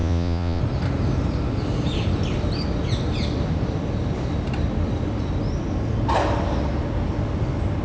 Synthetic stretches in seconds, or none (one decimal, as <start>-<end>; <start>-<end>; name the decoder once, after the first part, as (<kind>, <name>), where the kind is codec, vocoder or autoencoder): 0.0-0.6 (vocoder, Vocos)

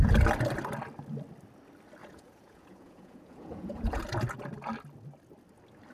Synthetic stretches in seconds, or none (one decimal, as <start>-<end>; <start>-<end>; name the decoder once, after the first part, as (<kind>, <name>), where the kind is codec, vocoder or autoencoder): 2.0-4.0 (vocoder, Vocos)